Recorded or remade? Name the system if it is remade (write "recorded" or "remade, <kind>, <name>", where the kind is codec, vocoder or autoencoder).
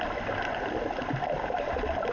recorded